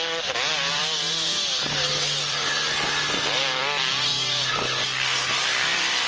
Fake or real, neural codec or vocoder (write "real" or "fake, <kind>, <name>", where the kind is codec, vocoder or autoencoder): fake, vocoder, BigVGAN v2